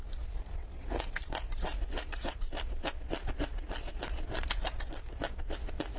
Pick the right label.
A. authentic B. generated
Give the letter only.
A